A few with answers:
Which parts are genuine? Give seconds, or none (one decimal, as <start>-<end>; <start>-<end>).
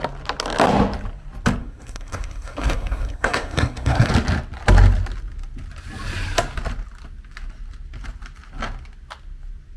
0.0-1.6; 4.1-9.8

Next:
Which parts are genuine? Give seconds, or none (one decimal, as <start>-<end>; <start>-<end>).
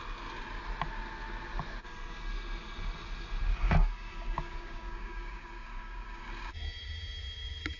0.0-3.5; 6.5-7.8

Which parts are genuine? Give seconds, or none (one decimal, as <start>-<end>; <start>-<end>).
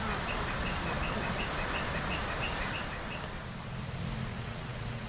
0.0-4.3